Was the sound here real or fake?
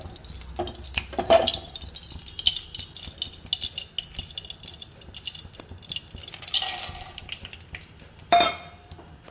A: real